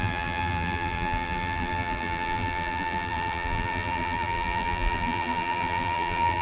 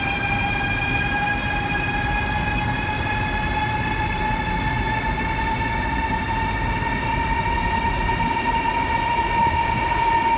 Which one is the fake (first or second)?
first